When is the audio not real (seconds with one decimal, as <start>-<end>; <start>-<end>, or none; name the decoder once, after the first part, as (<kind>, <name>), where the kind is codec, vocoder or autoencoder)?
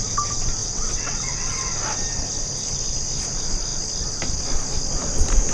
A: 0.6-1.7 (vocoder, WaveNeXt)